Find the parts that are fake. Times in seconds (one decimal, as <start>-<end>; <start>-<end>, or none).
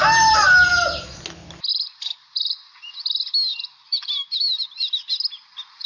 1.7-2.9; 3.5-5.0